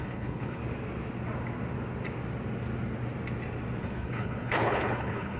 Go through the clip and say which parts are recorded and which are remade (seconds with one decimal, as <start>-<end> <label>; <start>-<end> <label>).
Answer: 0.0-0.6 remade; 0.6-3.8 recorded; 3.8-5.4 remade